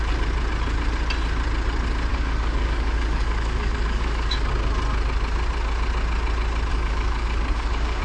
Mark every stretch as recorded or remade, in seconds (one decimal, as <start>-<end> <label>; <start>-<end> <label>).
0.0-2.1 recorded; 2.1-4.5 remade; 4.5-6.7 recorded; 6.7-8.0 remade